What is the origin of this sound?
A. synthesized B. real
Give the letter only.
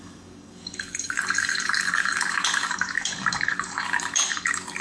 A